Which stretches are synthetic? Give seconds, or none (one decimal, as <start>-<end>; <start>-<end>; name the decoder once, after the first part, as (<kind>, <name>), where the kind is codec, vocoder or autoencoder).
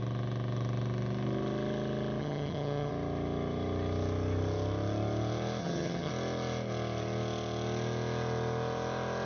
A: 2.2-2.9 (vocoder, HiFi-GAN); 5.6-6.1